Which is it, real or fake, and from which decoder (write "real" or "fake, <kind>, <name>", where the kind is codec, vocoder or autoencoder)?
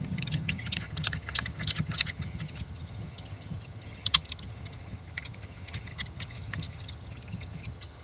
fake, vocoder, HiFi-GAN